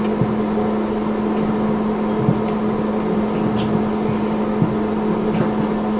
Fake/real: real